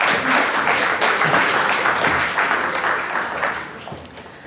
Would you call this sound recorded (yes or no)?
yes